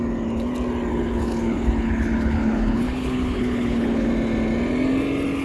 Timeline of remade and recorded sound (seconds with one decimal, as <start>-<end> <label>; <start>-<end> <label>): 0.0-0.9 recorded; 0.9-4.1 remade; 4.1-5.4 recorded